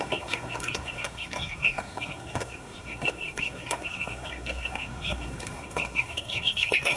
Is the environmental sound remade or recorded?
remade